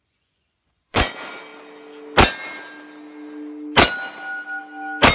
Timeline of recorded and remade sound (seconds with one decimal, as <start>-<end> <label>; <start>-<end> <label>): 0.0-1.0 remade; 1.0-5.1 recorded